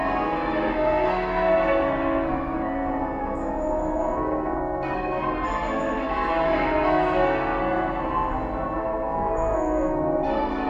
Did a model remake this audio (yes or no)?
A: yes